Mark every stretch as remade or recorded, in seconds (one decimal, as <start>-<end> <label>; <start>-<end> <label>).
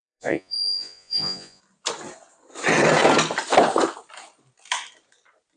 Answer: 0.0-1.6 remade; 1.6-5.6 recorded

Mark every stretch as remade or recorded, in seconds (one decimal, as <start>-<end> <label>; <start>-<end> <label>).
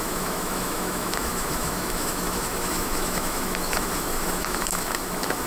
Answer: 0.0-5.5 remade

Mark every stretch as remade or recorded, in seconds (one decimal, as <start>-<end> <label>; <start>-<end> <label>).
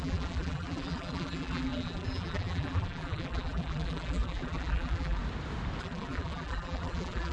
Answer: 0.0-5.2 remade; 5.2-5.8 recorded; 5.8-7.3 remade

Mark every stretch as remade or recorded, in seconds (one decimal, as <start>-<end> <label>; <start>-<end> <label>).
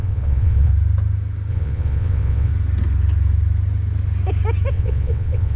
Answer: 0.0-0.7 remade; 0.7-1.5 recorded; 1.5-2.5 remade; 2.5-4.7 recorded; 4.7-5.6 remade